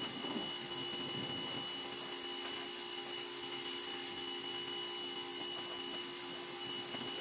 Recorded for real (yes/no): yes